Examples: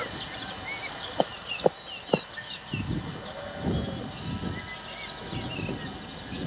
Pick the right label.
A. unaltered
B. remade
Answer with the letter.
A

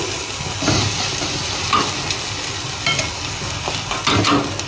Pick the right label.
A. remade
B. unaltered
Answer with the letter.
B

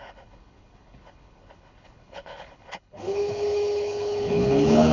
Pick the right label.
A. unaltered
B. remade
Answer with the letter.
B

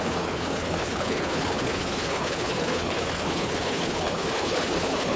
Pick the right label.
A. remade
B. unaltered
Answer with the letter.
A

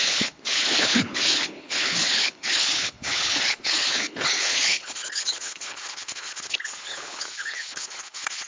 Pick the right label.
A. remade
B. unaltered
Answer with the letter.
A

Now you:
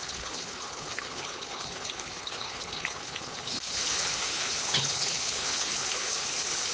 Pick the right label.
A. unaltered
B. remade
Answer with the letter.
B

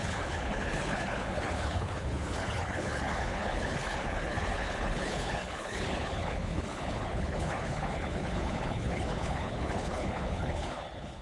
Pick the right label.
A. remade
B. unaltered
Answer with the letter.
A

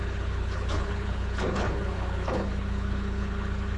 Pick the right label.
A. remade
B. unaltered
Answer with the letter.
A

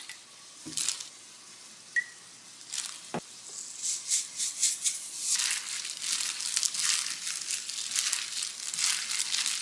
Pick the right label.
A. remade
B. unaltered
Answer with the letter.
B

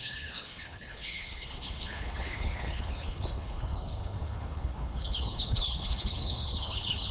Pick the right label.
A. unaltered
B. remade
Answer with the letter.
B